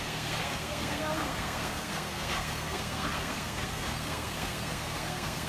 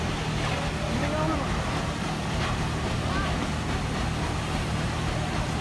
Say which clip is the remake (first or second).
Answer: first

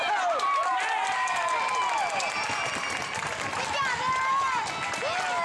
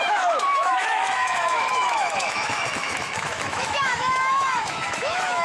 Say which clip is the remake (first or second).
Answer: second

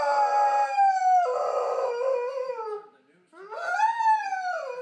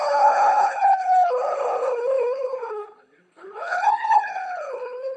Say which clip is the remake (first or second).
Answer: second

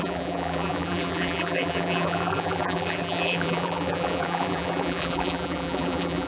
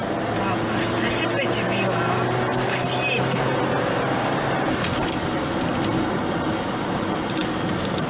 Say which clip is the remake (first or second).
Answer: first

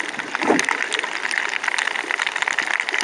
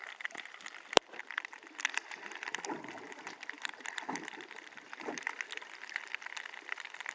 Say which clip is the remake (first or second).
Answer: second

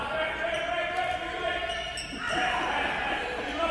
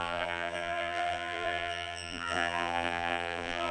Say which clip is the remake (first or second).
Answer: second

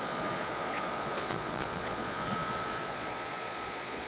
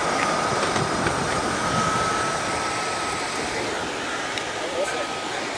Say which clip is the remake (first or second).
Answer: first